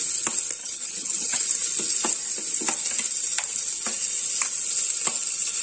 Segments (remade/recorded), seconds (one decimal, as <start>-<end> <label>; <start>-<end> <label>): 0.0-0.6 recorded; 0.6-1.4 remade; 1.4-5.6 recorded